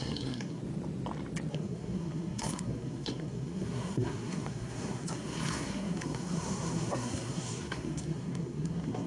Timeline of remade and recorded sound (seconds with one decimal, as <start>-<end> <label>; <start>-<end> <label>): 0.0-0.6 remade; 0.6-1.5 recorded; 1.5-9.1 remade